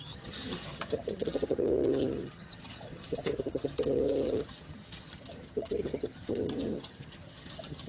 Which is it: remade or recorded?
remade